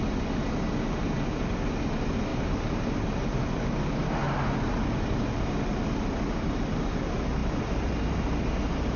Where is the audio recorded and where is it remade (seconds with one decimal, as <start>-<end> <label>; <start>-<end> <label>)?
0.0-9.0 recorded